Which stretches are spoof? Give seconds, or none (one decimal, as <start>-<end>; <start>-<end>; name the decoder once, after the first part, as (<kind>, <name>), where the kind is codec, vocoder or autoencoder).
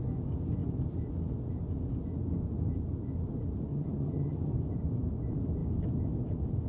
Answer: 3.7-4.5 (vocoder, HiFi-GAN)